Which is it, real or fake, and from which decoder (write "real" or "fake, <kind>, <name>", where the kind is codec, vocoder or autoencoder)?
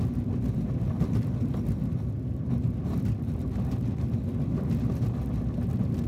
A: real